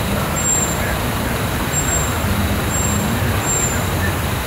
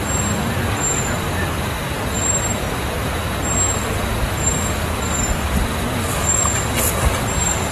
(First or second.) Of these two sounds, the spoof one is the first